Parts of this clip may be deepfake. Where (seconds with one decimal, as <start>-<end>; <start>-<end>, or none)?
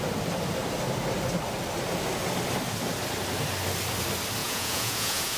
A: 4.4-5.4